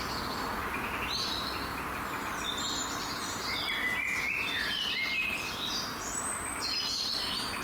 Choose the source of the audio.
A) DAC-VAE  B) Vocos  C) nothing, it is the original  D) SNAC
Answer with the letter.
C